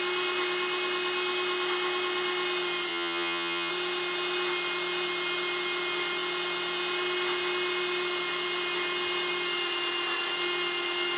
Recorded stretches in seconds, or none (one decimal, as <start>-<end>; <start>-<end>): 0.0-2.9; 3.7-11.2